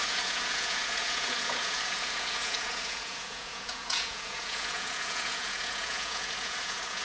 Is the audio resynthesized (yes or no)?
yes